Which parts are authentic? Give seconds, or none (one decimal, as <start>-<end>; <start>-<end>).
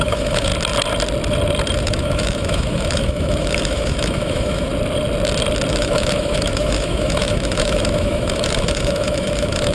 0.5-1.8; 4.7-5.7